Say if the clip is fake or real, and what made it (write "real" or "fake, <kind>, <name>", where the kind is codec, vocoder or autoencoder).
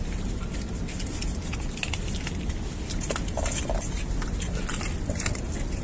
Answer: real